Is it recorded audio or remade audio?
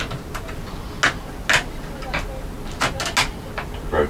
recorded